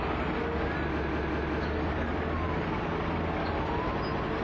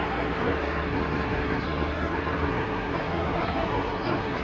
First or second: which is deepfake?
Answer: second